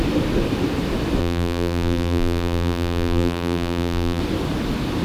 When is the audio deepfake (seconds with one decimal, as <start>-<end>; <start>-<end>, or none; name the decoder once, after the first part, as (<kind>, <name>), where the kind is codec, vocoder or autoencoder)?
1.2-4.2 (vocoder, BigVGAN v2)